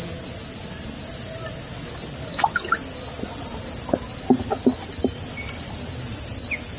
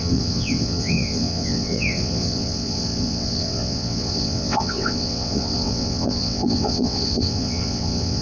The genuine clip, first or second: first